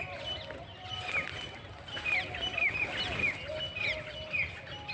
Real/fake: real